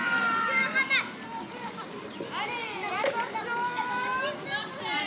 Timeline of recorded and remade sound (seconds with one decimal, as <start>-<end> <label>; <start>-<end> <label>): 0.0-0.6 remade; 0.6-1.9 recorded; 1.9-5.1 remade